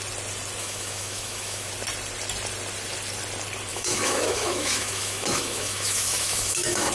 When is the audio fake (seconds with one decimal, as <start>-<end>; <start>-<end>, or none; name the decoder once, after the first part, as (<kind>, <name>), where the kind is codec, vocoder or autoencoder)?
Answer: 0.6-1.7 (autoencoder, DAC-VAE); 3.7-6.9